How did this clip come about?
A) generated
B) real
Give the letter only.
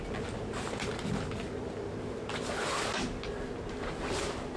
B